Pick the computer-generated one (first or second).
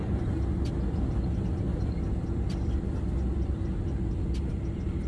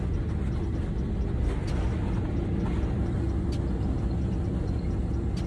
first